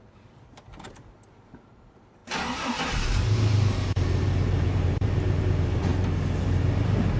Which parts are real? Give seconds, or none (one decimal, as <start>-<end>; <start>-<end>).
5.9-6.4